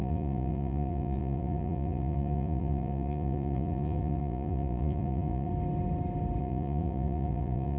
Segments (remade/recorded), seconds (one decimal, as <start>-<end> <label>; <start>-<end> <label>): 0.0-5.5 remade; 5.5-6.4 recorded; 6.4-7.8 remade

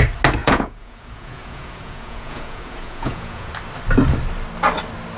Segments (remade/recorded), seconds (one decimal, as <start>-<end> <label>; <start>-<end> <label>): 0.0-0.4 recorded; 0.4-3.5 remade; 3.5-5.2 recorded